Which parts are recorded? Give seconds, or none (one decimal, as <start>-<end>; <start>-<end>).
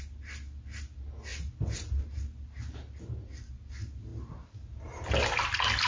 0.0-5.9